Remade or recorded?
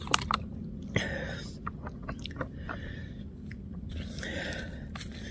recorded